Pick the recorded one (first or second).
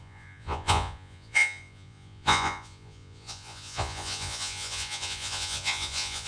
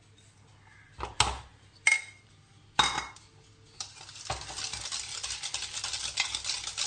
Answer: second